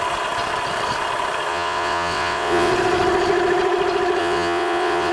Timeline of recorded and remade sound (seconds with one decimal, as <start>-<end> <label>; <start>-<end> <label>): 0.0-1.5 recorded; 1.5-2.7 remade; 2.7-4.2 recorded; 4.2-5.1 remade